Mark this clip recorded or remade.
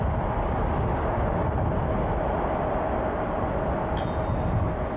recorded